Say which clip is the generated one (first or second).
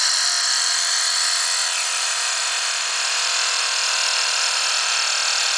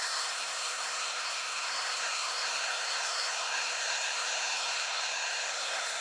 second